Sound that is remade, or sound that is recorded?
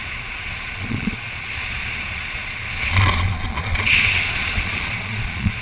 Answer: remade